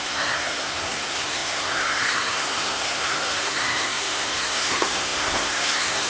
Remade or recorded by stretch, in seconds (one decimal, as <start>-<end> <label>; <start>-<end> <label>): 0.0-6.1 remade